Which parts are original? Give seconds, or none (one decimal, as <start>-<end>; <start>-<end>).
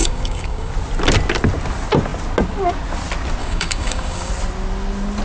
0.7-3.4; 4.3-5.2